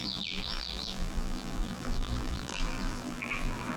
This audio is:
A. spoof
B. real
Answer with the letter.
A